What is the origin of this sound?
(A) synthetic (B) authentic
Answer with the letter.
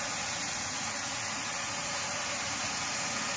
A